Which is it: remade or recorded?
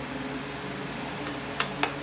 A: recorded